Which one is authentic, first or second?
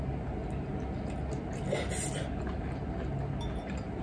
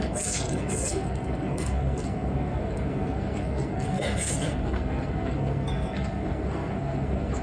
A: first